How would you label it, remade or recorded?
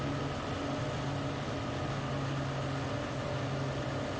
recorded